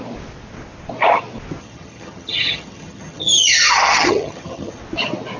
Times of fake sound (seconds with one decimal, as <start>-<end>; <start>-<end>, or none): 1.6-4.8